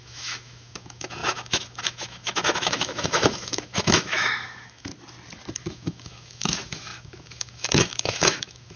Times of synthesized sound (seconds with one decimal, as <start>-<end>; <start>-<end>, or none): 0.0-4.9; 5.6-8.8